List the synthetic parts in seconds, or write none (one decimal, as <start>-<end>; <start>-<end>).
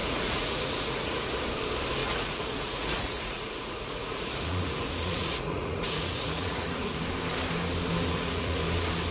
0.0-1.3; 2.0-7.0; 8.1-8.6